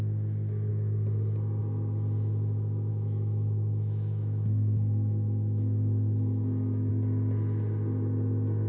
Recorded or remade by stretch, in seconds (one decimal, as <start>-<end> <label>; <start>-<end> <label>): 0.0-2.9 recorded; 2.9-6.9 remade; 6.9-8.7 recorded